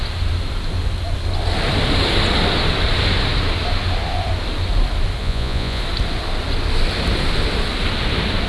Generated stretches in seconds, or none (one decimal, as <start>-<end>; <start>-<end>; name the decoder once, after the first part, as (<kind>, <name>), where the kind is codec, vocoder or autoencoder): 5.2-5.8 (vocoder, Vocos)